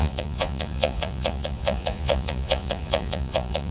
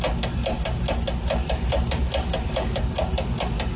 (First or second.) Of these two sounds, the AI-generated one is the first